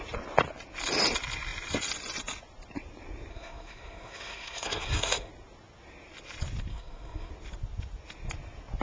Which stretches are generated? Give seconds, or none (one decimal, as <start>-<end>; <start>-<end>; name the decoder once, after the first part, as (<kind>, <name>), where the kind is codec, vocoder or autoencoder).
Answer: 3.3-5.3 (codec, SNAC); 6.7-7.3